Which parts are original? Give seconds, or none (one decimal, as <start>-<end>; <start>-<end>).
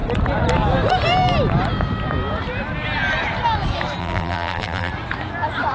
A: 0.0-4.0; 4.9-5.7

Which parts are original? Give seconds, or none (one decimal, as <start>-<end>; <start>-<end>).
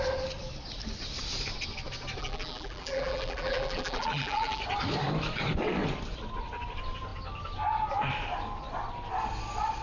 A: 0.0-2.2; 4.6-9.8